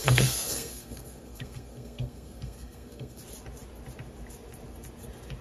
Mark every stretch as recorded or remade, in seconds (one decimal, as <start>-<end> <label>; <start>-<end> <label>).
0.0-3.2 remade; 3.2-5.4 recorded